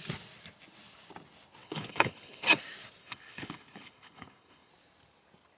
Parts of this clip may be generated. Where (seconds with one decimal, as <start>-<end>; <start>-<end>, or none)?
1.6-2.4; 3.0-4.7